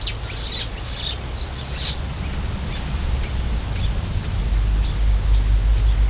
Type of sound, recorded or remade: recorded